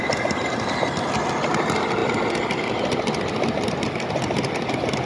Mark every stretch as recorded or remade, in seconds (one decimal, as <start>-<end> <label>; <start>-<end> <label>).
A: 0.0-5.1 recorded